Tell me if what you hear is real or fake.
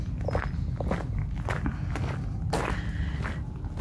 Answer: real